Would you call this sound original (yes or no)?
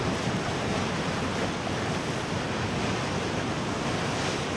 yes